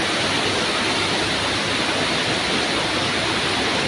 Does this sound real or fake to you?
real